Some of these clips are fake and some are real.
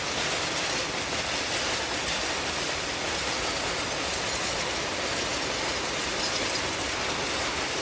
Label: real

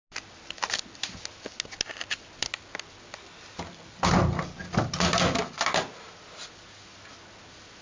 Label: real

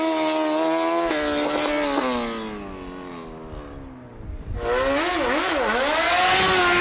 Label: real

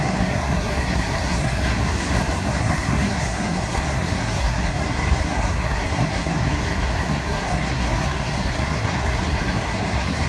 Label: fake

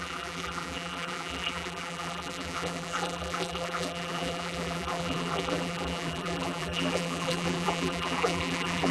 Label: fake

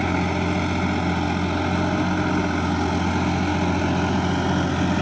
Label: real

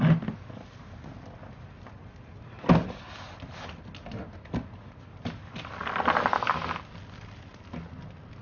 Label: real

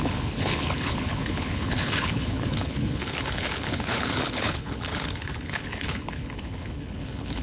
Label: fake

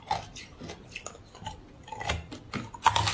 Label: real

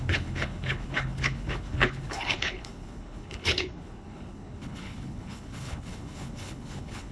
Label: fake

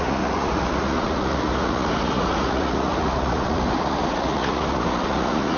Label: fake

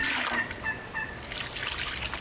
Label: real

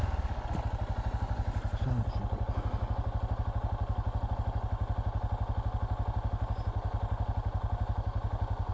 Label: real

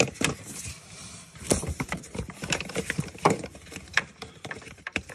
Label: fake